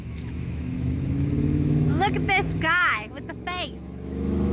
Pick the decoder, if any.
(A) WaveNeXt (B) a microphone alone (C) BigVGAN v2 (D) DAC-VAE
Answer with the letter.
D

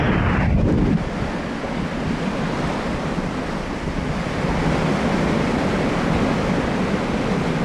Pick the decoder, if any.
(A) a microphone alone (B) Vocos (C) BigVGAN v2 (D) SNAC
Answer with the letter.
A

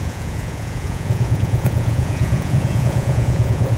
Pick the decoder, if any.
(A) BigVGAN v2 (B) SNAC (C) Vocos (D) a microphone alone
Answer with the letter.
C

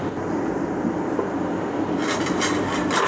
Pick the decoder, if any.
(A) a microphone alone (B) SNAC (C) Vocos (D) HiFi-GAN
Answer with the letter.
A